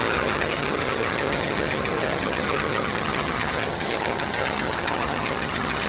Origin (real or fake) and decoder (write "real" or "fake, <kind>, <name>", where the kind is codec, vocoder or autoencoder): fake, vocoder, HiFi-GAN